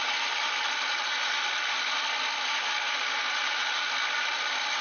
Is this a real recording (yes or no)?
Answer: yes